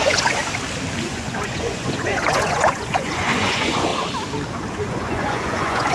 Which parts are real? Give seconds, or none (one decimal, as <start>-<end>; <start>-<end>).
0.4-1.0; 3.9-4.7